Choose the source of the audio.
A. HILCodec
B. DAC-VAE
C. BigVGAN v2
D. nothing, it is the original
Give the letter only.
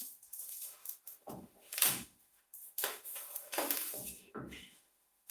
B